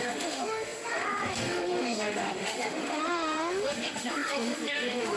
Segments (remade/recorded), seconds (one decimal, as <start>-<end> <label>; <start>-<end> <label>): 0.0-5.2 remade